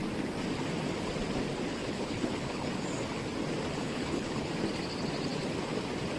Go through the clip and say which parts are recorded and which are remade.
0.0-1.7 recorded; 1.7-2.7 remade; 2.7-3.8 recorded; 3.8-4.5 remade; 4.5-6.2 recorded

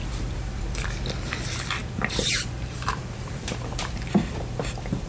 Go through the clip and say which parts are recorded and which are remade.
0.0-5.1 remade

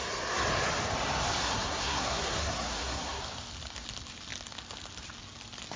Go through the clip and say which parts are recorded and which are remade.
0.0-1.4 recorded; 1.4-3.2 remade; 3.2-5.8 recorded

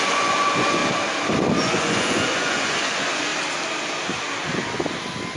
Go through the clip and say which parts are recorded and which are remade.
0.0-0.8 remade; 0.8-1.6 recorded; 1.6-3.3 remade; 3.3-5.4 recorded